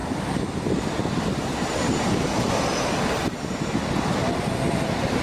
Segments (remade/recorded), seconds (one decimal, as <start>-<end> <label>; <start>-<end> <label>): 0.0-3.1 remade; 3.1-4.2 recorded; 4.2-5.2 remade